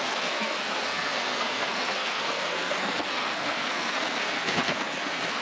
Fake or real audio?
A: fake